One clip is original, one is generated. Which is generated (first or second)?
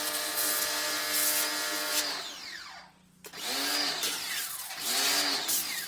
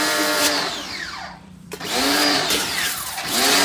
second